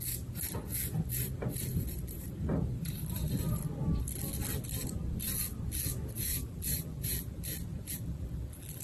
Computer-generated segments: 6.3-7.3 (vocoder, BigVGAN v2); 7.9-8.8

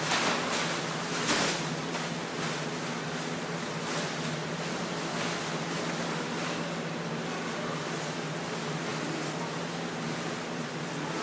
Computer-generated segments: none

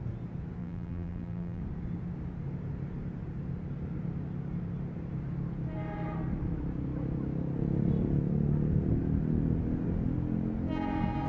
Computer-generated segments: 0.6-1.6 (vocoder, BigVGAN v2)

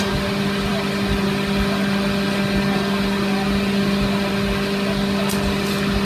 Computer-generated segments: none